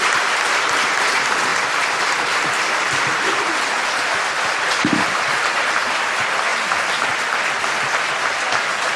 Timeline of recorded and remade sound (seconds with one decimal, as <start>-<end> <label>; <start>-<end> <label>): 0.0-6.5 remade; 6.5-7.8 recorded; 7.8-9.0 remade